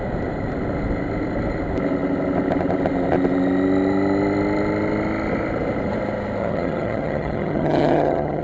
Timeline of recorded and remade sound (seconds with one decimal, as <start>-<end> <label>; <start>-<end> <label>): 0.0-6.4 recorded; 6.4-8.4 remade